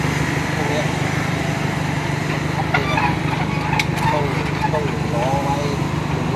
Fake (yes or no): yes